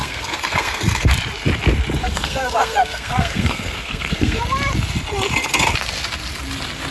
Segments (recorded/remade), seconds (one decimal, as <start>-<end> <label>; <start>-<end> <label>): 0.0-1.1 remade; 1.1-2.0 recorded; 2.0-4.4 remade; 4.4-6.9 recorded